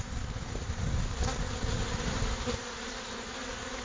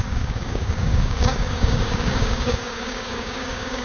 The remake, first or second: second